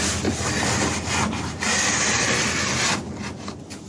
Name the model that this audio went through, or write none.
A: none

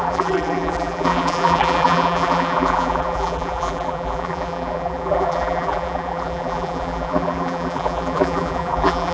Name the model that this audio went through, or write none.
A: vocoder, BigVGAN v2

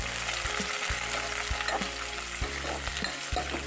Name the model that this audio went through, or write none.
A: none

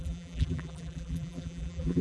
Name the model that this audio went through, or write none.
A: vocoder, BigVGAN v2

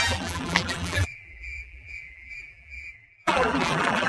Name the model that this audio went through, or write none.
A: vocoder, BigVGAN v2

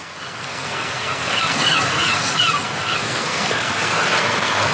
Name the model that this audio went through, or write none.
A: codec, SNAC